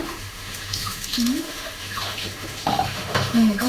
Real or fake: fake